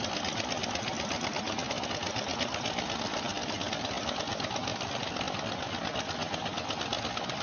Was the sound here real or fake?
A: real